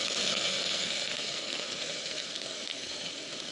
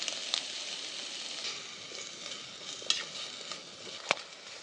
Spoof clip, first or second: first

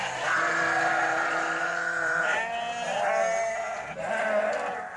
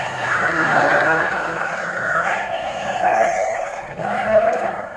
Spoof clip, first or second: second